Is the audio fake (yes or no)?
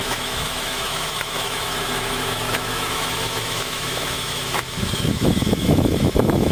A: yes